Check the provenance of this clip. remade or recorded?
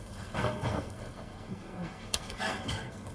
remade